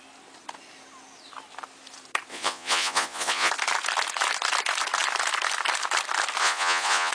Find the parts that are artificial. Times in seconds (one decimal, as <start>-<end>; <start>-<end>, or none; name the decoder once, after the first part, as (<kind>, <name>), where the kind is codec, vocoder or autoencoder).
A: 2.3-3.5 (vocoder, Vocos); 6.4-7.1